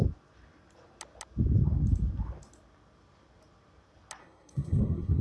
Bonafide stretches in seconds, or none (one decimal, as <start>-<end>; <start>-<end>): 0.0-4.2